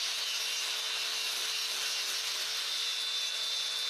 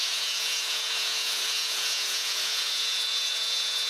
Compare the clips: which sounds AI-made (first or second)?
second